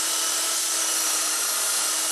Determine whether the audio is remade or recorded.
recorded